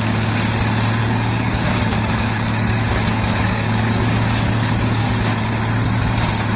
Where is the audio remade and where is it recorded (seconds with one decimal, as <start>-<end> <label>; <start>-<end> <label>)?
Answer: 0.0-1.0 recorded; 1.0-5.0 remade; 5.0-6.6 recorded